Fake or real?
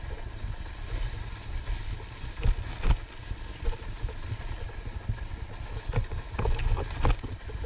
real